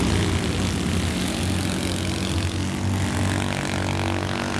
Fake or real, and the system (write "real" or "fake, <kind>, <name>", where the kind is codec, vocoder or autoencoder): real